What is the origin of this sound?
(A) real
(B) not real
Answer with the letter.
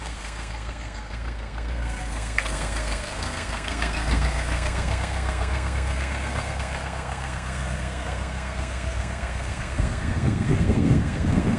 B